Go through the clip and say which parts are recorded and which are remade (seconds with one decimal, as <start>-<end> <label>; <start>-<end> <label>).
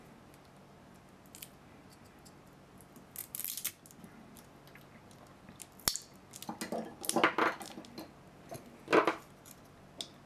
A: 0.0-10.3 recorded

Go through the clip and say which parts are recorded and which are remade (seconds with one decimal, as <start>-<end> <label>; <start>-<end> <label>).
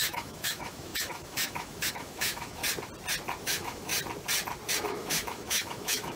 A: 0.0-2.6 remade; 2.6-3.4 recorded; 3.4-3.9 remade; 3.9-4.8 recorded; 4.8-6.2 remade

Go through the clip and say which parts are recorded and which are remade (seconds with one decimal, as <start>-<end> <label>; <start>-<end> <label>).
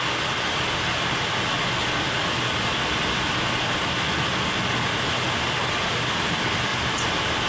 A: 0.0-7.5 recorded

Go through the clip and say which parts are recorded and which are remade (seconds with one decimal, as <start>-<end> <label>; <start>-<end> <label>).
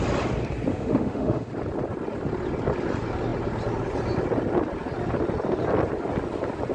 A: 0.0-0.7 recorded; 0.7-1.5 remade; 1.5-6.7 recorded